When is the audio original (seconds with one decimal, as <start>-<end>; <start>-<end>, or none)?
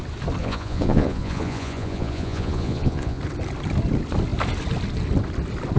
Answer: 0.0-0.4; 3.2-5.8